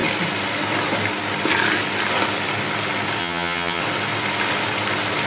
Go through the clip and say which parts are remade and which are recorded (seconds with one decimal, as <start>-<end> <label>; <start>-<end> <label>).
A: 0.0-3.2 recorded; 3.2-3.8 remade; 3.8-5.3 recorded